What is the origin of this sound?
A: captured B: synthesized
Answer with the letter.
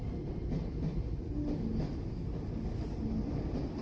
A